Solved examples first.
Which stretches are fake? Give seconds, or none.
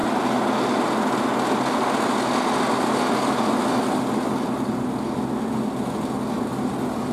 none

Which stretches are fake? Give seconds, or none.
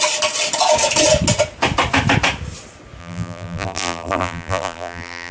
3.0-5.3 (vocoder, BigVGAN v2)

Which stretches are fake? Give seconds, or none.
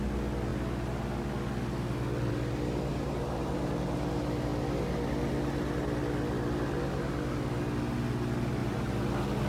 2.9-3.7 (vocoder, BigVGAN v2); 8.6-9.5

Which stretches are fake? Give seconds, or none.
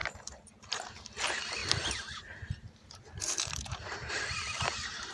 0.0-1.0 (vocoder, BigVGAN v2); 1.6-4.1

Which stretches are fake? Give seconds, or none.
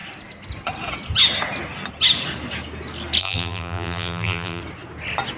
3.2-4.6 (vocoder, BigVGAN v2)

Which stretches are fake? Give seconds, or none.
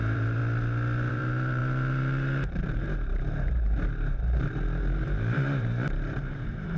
0.0-0.4 (vocoder, BigVGAN v2); 1.1-6.8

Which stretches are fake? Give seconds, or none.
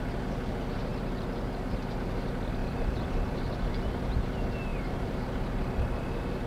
0.9-2.1 (vocoder, BigVGAN v2); 2.6-3.4; 4.7-5.3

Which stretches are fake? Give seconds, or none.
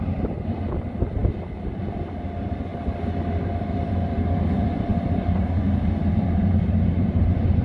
0.0-2.7 (vocoder, BigVGAN v2); 3.5-7.6